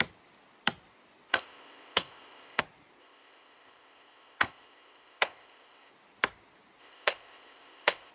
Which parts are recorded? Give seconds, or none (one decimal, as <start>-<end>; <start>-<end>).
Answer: 0.0-1.3; 2.6-3.0; 5.9-6.8